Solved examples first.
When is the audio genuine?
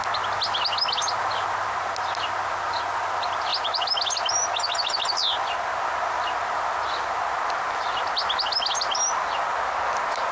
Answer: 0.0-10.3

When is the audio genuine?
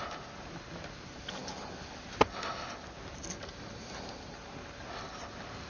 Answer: 0.0-5.7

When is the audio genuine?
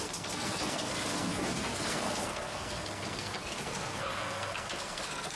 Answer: none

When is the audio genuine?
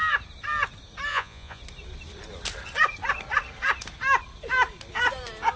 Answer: 0.0-1.1; 1.6-5.6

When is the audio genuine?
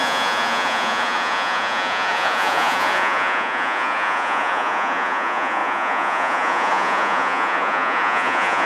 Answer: none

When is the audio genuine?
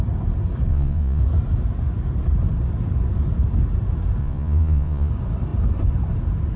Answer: 0.0-0.7; 1.2-4.2; 5.1-6.6